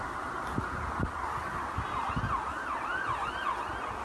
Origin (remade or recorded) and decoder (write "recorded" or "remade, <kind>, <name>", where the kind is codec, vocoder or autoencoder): recorded